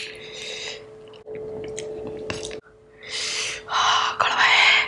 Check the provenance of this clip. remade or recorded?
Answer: recorded